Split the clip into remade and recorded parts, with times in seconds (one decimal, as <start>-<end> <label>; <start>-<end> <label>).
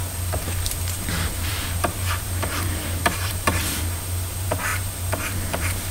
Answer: 0.0-5.9 remade